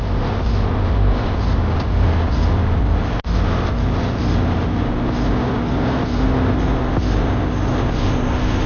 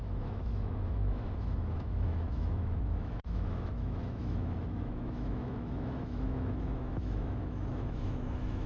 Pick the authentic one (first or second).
first